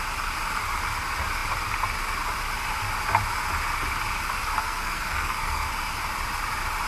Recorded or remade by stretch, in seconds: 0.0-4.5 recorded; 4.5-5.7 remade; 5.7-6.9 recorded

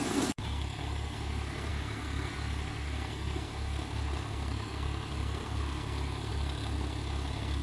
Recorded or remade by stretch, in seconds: 0.0-7.6 remade

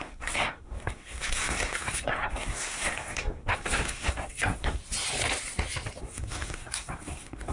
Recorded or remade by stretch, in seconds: 0.0-4.8 remade; 4.8-6.0 recorded; 6.0-7.5 remade